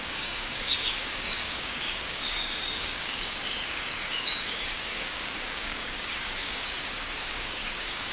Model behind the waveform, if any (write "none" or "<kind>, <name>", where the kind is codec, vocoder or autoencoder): codec, DAC